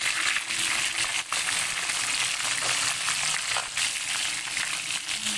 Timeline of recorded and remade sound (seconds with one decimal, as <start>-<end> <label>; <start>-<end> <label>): 0.0-5.4 recorded